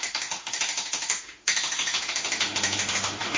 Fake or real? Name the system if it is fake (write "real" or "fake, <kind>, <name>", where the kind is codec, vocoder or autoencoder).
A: fake, autoencoder, DAC-VAE